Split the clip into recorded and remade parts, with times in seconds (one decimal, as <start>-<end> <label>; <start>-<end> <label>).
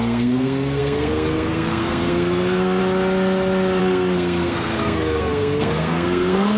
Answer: 0.0-2.8 remade; 2.8-3.8 recorded; 3.8-6.6 remade